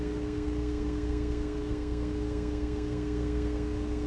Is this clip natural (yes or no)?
no